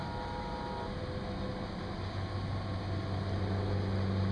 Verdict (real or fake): real